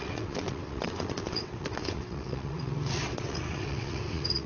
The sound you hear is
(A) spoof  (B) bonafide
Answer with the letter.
A